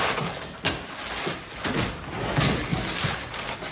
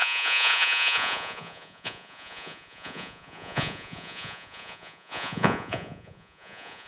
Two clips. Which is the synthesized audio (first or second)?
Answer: second